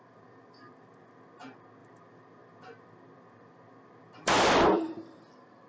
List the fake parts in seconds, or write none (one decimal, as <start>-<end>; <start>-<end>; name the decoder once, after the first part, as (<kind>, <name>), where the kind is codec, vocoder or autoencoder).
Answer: 1.8-5.2 (vocoder, BigVGAN v2)